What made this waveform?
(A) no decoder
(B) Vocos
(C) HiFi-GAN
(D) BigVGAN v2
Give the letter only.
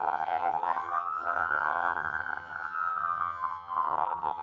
C